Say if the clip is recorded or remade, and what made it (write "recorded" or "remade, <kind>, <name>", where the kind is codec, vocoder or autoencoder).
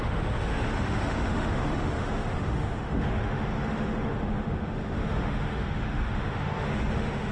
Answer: remade, autoencoder, DAC-VAE